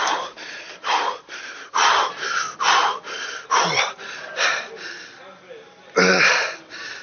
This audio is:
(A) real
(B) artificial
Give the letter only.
A